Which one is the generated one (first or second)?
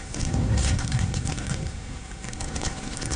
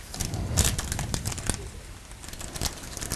first